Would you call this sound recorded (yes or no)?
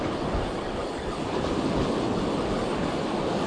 yes